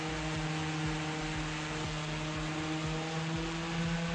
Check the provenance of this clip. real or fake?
real